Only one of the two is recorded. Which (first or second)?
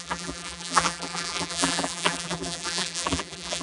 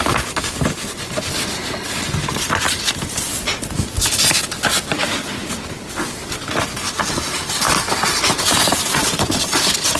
second